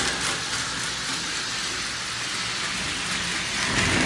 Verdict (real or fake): real